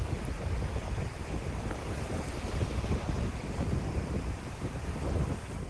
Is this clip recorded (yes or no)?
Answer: yes